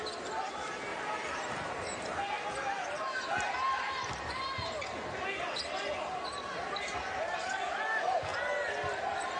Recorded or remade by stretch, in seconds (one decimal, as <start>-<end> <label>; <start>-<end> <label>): 0.0-0.9 recorded; 0.9-2.0 remade; 2.0-9.4 recorded